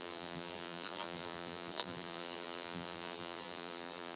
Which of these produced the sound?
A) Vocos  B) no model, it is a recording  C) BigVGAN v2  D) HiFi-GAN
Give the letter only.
C